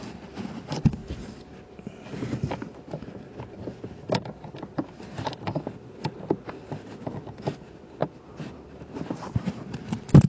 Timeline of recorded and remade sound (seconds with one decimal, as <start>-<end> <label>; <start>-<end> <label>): 0.0-1.0 recorded; 1.0-5.6 remade; 5.6-8.0 recorded; 8.0-9.5 remade; 9.5-10.3 recorded